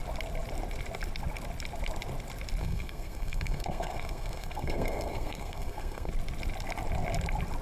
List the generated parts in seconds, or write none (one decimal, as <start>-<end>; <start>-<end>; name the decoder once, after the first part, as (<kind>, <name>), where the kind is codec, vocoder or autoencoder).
2.6-6.1 (codec, SNAC)